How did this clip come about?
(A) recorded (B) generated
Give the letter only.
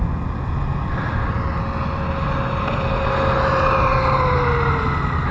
A